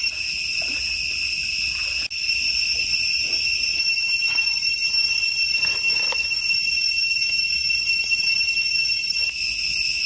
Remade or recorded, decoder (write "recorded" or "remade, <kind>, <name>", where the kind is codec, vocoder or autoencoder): recorded